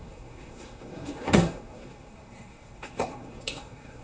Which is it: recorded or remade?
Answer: remade